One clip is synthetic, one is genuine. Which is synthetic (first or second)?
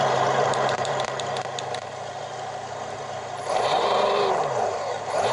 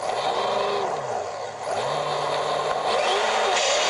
first